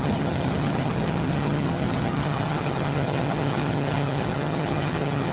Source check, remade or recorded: remade